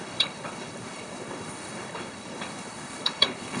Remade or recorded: remade